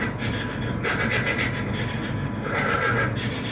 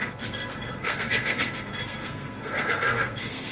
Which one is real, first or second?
first